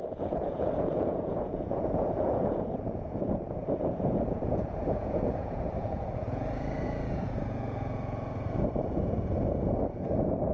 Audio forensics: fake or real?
fake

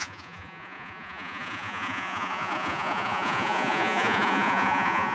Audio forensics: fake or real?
fake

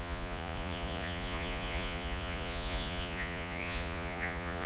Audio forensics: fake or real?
fake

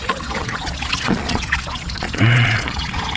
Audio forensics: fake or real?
fake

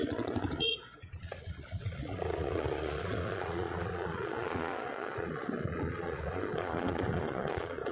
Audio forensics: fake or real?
fake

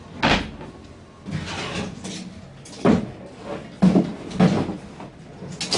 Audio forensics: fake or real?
real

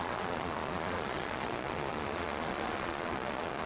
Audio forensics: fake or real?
fake